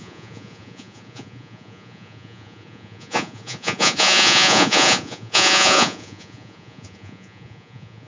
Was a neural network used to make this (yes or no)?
yes